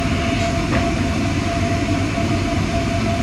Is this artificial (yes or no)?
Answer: no